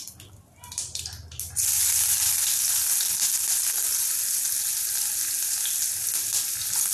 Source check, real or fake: real